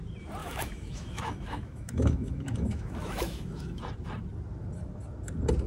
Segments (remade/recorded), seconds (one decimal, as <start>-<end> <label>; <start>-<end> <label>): 0.0-0.4 recorded; 0.4-3.8 remade; 3.8-5.7 recorded